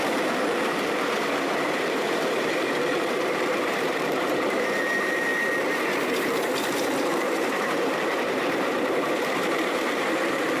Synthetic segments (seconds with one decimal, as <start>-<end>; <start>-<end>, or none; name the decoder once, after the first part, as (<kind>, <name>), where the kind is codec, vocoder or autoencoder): 0.0-5.3 (vocoder, BigVGAN v2); 7.0-10.6